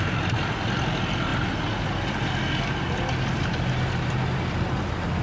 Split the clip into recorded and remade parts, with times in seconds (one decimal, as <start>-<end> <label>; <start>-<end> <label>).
0.0-5.2 recorded